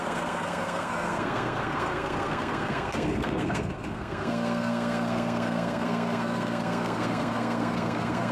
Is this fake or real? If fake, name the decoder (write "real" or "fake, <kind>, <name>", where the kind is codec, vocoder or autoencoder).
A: fake, codec, SNAC